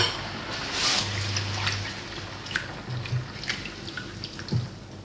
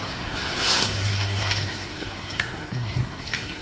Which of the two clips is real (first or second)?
first